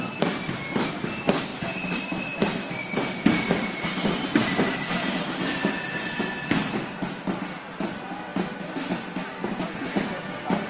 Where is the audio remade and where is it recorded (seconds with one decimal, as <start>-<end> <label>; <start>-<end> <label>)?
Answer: 0.0-10.7 recorded